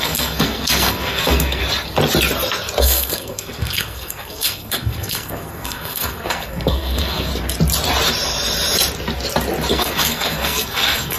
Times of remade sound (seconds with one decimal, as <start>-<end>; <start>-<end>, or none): 0.0-1.6; 2.8-7.3; 9.7-11.2